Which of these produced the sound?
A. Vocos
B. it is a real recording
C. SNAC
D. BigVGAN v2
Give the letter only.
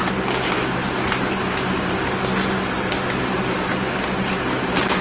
B